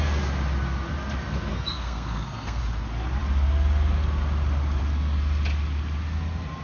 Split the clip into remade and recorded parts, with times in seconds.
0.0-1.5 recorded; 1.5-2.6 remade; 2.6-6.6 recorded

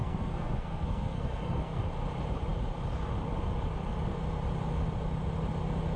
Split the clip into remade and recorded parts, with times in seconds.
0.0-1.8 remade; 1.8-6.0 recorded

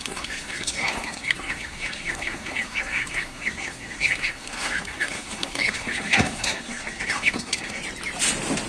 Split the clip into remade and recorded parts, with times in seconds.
0.0-7.8 remade; 7.8-8.7 recorded

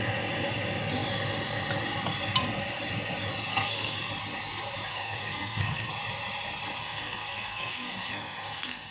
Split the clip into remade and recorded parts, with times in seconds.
0.0-3.5 recorded; 3.5-4.1 remade; 4.1-4.9 recorded; 4.9-5.9 remade; 5.9-6.8 recorded; 6.8-8.9 remade

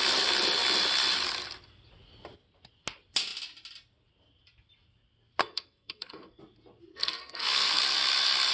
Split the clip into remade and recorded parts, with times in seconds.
0.0-5.4 recorded; 5.4-6.4 remade; 6.4-6.9 recorded; 6.9-7.8 remade; 7.8-8.5 recorded

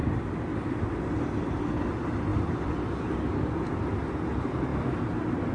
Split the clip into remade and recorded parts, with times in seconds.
0.0-5.5 recorded